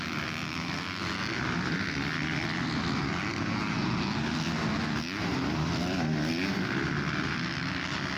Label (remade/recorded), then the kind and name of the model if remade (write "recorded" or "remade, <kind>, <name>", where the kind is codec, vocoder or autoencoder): recorded